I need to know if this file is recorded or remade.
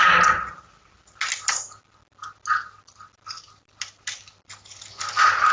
recorded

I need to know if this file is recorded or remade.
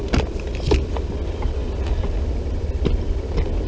recorded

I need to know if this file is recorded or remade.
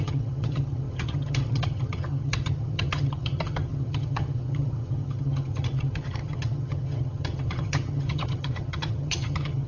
remade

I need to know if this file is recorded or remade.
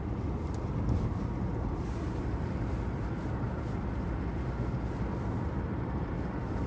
recorded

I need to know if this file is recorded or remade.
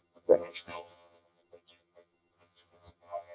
remade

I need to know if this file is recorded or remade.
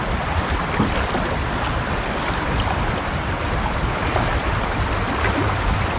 recorded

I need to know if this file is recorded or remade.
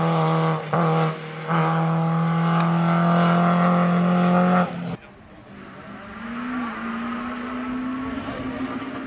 recorded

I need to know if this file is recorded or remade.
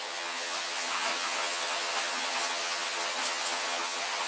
remade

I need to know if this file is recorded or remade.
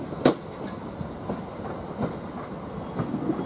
recorded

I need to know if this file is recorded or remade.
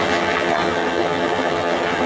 remade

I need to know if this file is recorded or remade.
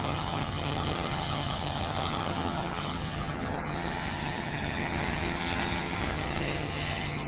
remade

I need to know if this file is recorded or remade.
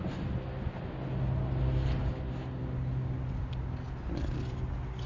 recorded